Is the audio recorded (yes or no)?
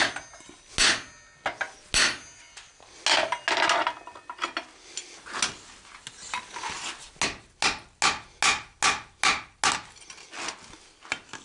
yes